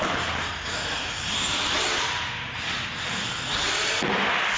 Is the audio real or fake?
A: real